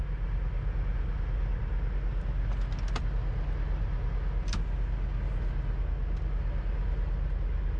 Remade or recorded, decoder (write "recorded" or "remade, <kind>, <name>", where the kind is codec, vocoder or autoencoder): recorded